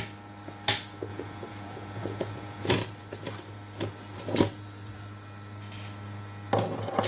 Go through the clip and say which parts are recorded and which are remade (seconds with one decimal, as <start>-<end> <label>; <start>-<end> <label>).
0.0-1.1 recorded; 1.1-2.7 remade; 2.7-7.1 recorded